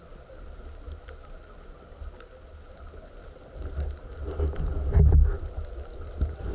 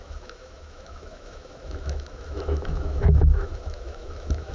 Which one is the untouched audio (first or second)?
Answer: first